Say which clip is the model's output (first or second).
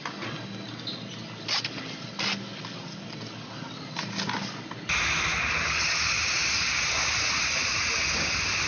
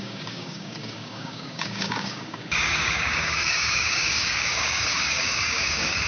second